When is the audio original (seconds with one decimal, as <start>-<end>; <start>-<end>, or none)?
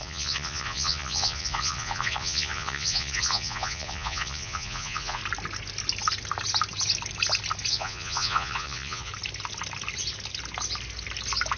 5.2-7.7; 9.1-11.6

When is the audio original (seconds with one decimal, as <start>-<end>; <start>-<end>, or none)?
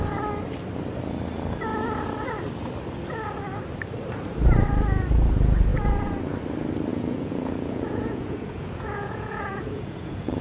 0.0-6.9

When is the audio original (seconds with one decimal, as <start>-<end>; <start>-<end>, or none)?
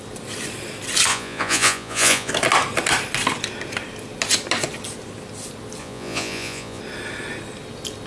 0.0-1.1; 2.3-5.8; 6.8-8.1